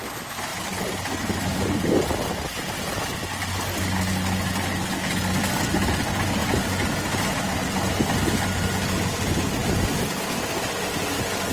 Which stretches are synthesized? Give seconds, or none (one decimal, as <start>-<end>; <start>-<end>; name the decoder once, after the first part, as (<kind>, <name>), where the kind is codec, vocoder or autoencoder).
none